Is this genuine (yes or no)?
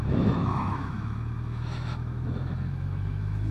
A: no